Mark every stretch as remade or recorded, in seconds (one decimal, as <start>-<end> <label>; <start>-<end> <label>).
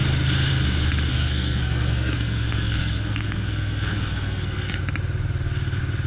0.0-1.1 recorded; 1.1-4.8 remade; 4.8-6.1 recorded